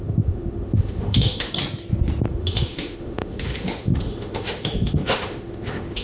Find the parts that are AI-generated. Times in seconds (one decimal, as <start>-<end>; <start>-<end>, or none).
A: 0.0-1.5; 2.3-6.0